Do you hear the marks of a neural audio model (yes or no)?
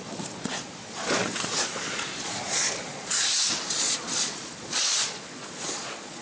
yes